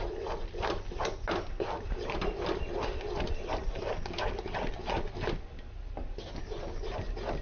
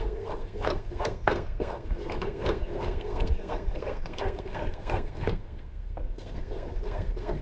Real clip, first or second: first